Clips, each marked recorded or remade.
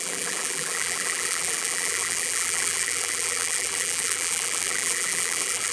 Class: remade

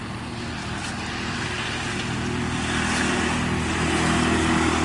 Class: recorded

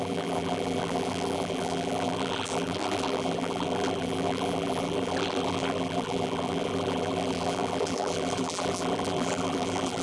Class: remade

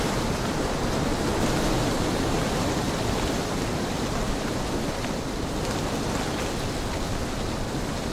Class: recorded